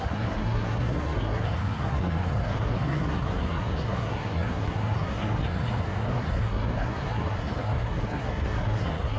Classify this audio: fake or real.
fake